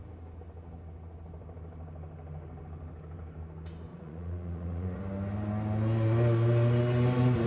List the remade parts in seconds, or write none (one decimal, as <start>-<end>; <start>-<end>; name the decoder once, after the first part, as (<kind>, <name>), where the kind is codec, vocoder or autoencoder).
3.9-5.0 (vocoder, Vocos)